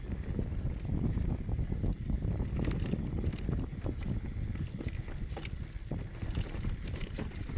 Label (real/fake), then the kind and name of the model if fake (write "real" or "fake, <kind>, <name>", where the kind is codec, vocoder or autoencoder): real